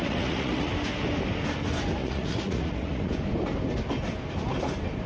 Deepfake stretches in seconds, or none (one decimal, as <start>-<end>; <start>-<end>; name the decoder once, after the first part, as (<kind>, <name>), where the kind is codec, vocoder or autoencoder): 0.0-0.7 (vocoder, Vocos); 2.0-3.1